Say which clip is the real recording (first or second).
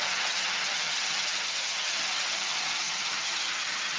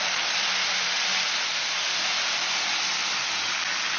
second